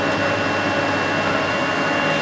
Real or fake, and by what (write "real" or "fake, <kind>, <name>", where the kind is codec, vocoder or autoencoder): real